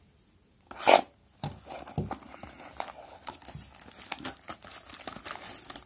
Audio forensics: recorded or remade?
recorded